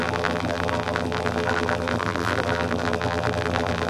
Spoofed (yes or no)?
yes